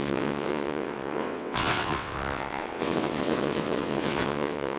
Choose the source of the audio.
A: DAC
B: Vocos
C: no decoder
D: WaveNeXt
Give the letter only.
D